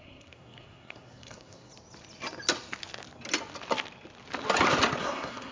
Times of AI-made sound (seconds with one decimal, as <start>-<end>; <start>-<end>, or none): 0.0-1.7; 5.0-5.5